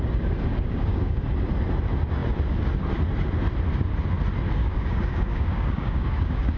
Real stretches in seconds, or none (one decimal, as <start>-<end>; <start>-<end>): 0.0-0.5; 1.2-4.6